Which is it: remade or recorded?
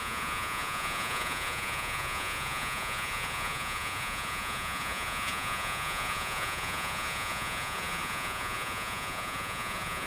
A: remade